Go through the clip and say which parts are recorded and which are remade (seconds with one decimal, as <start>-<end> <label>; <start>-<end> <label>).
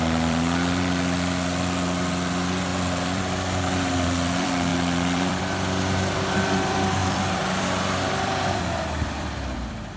0.0-10.0 remade